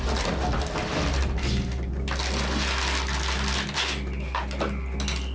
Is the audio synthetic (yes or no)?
no